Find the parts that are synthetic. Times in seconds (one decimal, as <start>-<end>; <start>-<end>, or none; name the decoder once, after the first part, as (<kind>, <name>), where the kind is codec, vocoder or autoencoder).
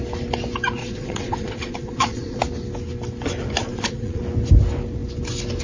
0.8-2.4 (vocoder, Vocos); 3.6-4.2